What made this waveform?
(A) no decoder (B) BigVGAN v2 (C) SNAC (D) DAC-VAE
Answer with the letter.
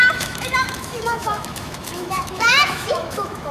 D